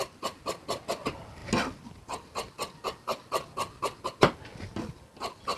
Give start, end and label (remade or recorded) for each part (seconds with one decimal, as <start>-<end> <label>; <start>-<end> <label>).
0.0-5.6 recorded